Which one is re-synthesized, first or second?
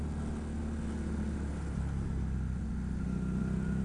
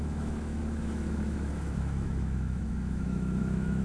second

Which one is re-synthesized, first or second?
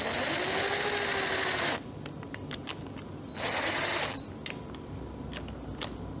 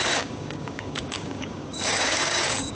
second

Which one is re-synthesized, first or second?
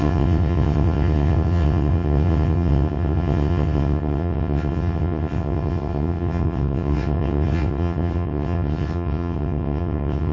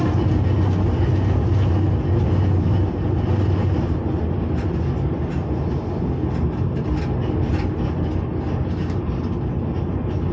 first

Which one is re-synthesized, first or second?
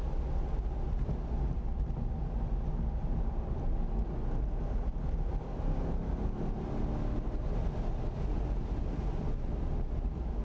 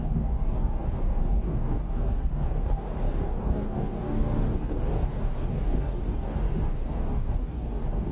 second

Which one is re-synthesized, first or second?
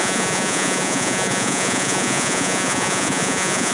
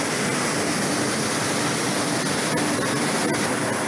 first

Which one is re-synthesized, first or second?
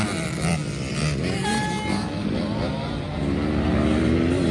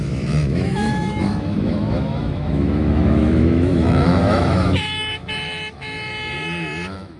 second